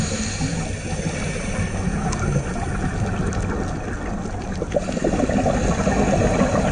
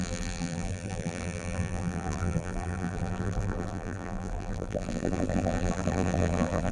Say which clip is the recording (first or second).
first